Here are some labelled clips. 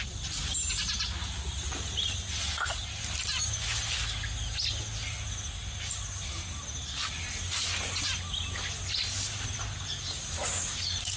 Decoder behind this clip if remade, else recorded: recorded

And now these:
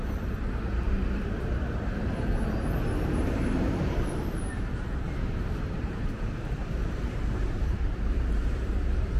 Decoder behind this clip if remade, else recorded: remade, vocoder, BigVGAN v2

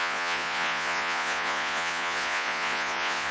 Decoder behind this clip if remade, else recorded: remade, vocoder, Vocos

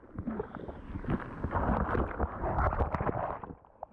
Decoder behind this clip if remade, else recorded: recorded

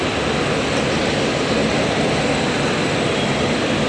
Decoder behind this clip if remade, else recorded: recorded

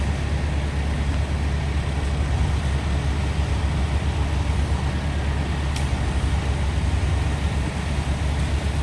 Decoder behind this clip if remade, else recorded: recorded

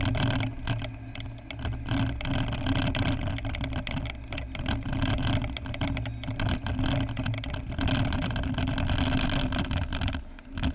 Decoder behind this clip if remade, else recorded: recorded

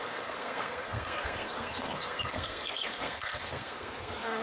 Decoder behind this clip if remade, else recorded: remade, codec, SNAC